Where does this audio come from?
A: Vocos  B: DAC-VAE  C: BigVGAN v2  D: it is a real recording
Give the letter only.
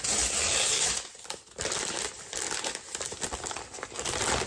D